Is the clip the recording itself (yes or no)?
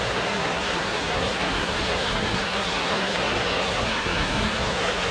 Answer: no